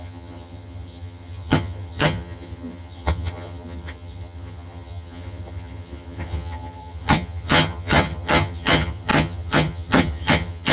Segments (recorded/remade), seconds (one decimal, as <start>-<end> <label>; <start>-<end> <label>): 0.0-10.7 remade